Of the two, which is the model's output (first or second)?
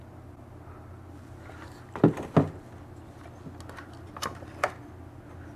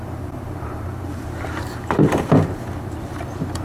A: second